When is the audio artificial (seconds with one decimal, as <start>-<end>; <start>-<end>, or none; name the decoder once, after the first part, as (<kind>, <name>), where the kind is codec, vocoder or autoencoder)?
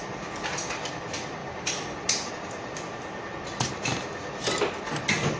none